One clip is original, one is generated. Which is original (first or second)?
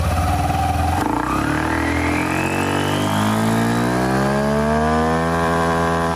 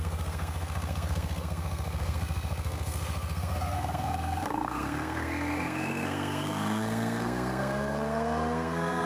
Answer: first